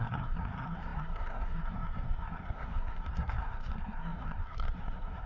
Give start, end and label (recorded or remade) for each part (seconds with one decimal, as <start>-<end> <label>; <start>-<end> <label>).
0.0-5.3 remade

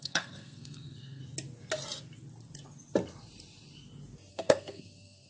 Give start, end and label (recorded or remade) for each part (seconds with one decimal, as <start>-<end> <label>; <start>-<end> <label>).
0.0-1.2 remade; 1.2-4.3 recorded; 4.3-5.3 remade

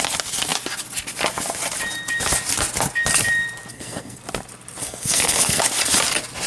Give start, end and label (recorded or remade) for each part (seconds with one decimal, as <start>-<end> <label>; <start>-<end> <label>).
0.0-3.7 recorded; 3.7-4.2 remade; 4.2-4.8 recorded; 4.8-5.6 remade; 5.6-6.5 recorded

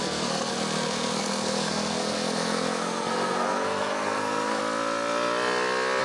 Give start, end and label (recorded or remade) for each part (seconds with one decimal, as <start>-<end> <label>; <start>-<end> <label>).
0.0-4.6 remade; 4.6-6.0 recorded

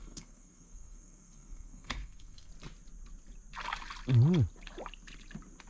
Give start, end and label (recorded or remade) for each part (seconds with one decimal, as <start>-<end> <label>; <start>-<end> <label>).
0.0-2.5 remade; 2.5-5.7 recorded

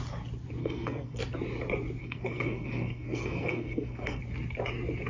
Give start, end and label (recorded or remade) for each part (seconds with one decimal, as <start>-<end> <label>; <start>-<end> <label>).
0.0-0.6 recorded; 0.6-1.2 remade; 1.2-2.0 recorded; 2.0-4.2 remade; 4.2-5.1 recorded